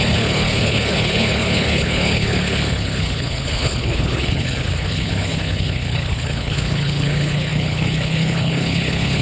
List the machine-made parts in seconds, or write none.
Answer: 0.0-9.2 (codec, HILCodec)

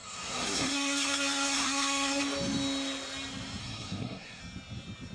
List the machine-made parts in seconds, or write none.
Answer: 0.0-2.2 (codec, SNAC); 3.6-4.4